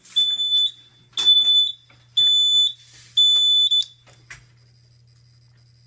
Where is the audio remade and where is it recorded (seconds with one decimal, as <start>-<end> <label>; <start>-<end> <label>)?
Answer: 0.0-5.9 recorded